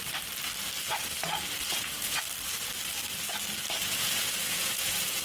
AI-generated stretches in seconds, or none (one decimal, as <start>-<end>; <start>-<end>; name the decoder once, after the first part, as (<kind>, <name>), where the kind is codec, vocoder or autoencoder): 1.7-2.2 (vocoder, Vocos); 3.8-5.2